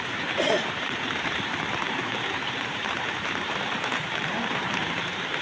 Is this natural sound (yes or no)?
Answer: no